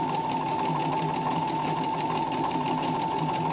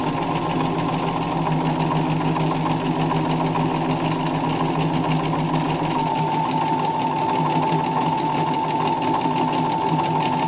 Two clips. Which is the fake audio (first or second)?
first